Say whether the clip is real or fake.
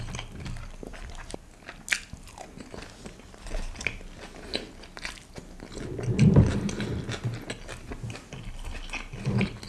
real